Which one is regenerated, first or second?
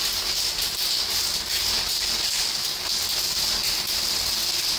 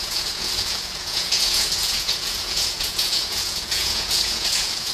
second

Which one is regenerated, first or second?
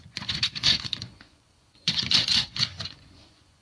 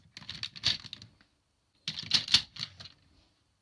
first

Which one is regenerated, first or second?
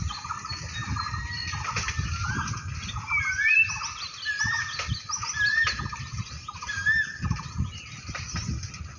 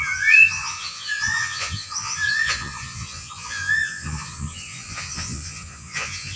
second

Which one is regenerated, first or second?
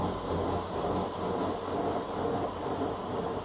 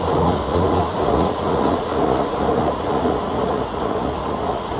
second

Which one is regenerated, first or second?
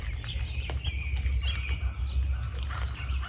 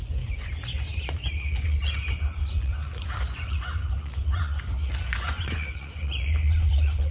second